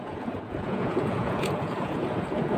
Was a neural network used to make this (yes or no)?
yes